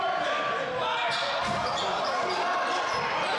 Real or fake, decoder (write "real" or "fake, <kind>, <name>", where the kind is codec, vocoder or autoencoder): real